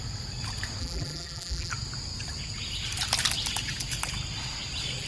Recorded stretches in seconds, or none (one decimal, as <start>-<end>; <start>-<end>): 0.0-0.8; 1.7-5.1